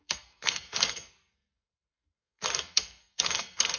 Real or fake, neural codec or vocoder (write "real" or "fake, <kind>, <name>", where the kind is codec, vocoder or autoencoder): fake, codec, SNAC